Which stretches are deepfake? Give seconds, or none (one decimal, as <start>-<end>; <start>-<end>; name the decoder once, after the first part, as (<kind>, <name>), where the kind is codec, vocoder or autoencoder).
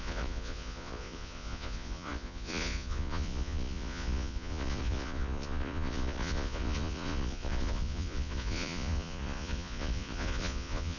0.0-11.0 (vocoder, Vocos)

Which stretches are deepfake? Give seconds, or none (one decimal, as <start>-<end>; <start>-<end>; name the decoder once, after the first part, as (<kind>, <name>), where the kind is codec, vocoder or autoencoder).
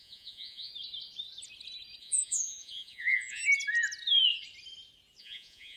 0.0-0.7 (vocoder, Vocos); 2.0-3.4; 5.2-5.8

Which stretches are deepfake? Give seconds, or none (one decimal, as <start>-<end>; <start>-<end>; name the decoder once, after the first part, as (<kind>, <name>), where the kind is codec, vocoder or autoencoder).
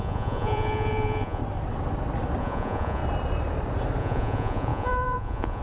0.0-1.4 (vocoder, Vocos); 2.4-3.0; 4.0-5.6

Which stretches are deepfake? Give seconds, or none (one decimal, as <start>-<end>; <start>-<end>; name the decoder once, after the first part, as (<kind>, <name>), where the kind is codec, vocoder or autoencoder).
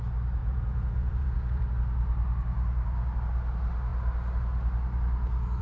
0.4-1.6 (vocoder, Vocos)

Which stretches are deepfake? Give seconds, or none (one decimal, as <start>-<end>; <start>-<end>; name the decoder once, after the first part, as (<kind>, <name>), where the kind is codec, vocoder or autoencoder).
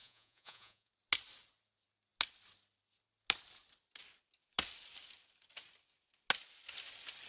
0.0-0.9 (vocoder, Vocos)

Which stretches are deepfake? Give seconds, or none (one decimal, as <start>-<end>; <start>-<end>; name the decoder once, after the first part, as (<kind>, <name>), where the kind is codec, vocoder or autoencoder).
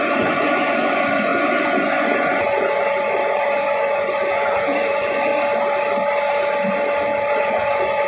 0.0-5.3 (vocoder, Vocos); 7.3-8.1